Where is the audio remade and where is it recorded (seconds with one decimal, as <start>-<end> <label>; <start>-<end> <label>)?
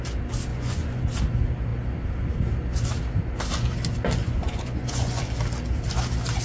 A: 0.0-0.5 recorded; 0.5-1.0 remade; 1.0-4.2 recorded; 4.2-5.2 remade; 5.2-6.4 recorded